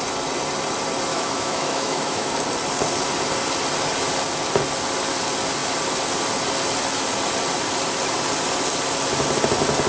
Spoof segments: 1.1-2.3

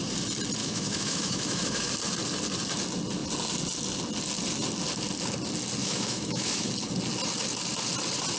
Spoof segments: 0.6-1.9; 5.8-6.7

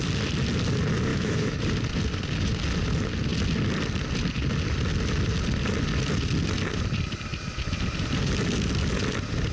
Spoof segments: 1.1-1.6

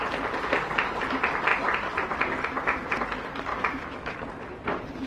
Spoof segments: 3.5-4.1

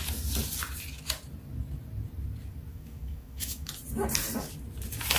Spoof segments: 2.7-3.7

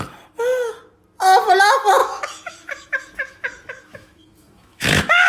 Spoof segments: 2.0-5.3